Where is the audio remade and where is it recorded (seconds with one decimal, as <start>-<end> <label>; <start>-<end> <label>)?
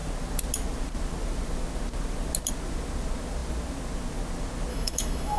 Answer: 0.0-4.7 recorded; 4.7-5.4 remade